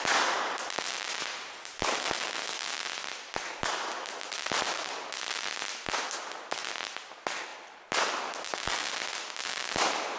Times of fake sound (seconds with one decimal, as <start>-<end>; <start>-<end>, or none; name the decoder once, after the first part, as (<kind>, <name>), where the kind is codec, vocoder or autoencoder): none